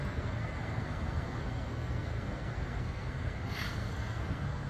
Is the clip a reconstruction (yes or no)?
yes